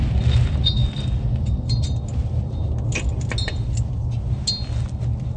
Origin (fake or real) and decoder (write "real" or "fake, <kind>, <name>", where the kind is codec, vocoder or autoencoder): real